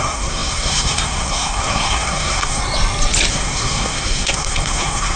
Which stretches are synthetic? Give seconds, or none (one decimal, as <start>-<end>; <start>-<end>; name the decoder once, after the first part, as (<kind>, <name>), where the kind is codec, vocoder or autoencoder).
0.0-2.6 (codec, SNAC); 3.3-5.2